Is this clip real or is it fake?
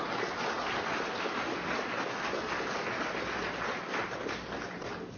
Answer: real